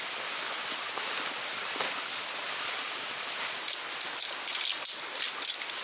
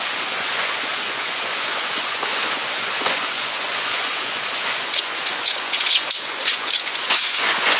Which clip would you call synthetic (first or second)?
second